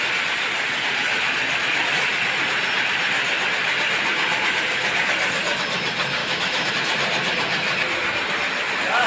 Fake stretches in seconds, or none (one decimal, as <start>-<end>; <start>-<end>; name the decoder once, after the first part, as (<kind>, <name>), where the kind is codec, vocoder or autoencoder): 6.2-6.7 (autoencoder, DAC-VAE)

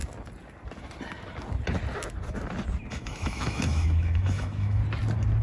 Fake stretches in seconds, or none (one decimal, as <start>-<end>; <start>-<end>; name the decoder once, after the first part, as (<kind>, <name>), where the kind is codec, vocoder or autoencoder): 2.9-4.8 (autoencoder, DAC-VAE)

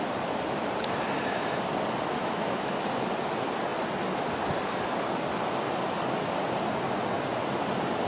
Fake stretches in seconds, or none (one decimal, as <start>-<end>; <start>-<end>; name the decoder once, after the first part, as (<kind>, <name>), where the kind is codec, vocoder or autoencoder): 2.2-2.7 (autoencoder, DAC-VAE)

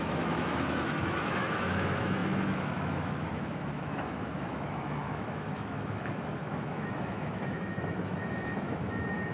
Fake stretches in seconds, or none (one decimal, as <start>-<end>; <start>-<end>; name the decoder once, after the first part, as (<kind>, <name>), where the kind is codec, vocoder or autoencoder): 0.0-9.3 (autoencoder, DAC-VAE)